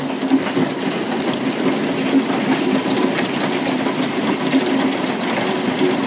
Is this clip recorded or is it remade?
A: recorded